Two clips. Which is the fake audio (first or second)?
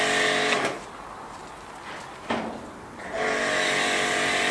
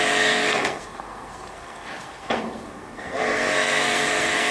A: second